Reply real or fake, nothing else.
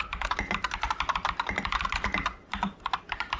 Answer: fake